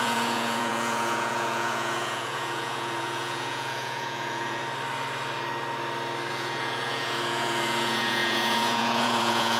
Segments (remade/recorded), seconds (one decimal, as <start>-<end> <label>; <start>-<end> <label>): 0.0-4.6 remade; 4.6-6.3 recorded; 6.3-9.6 remade